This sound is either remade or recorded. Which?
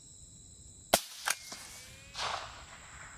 recorded